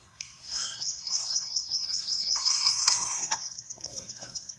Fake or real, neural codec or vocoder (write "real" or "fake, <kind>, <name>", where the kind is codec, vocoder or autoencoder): fake, codec, SNAC